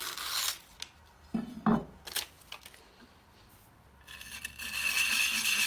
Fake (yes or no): no